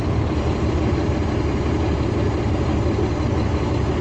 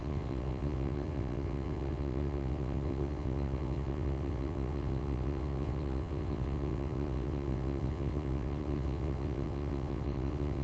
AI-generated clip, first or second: second